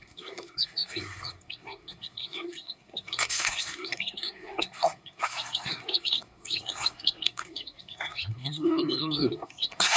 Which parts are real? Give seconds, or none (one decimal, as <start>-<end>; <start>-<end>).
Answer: none